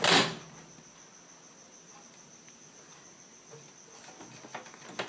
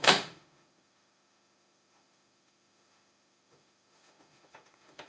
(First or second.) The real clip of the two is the first